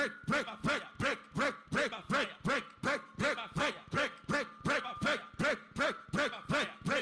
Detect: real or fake real